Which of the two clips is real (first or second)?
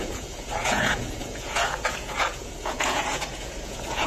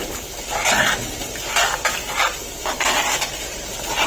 second